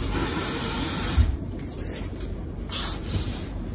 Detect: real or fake fake